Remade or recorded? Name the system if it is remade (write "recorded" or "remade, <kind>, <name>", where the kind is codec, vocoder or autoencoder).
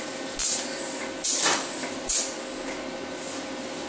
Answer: recorded